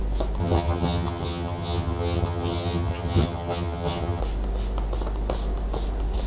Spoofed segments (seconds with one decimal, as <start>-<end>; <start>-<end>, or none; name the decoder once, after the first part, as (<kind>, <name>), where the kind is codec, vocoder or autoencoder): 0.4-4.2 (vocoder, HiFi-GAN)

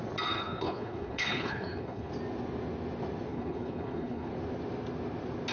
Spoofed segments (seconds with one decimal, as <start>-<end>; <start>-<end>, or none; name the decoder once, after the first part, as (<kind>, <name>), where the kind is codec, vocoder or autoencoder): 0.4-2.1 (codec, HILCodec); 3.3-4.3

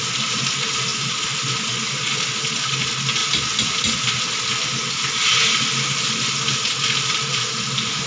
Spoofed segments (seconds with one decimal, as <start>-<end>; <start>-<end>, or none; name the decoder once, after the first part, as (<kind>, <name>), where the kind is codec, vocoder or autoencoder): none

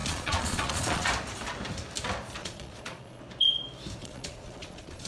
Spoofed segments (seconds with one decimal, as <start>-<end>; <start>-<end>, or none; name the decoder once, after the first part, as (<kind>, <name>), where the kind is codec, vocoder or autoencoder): 0.0-1.1 (vocoder, Vocos); 2.4-3.2; 4.0-5.1